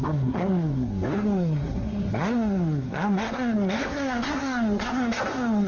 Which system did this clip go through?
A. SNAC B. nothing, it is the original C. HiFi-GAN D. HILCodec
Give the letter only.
A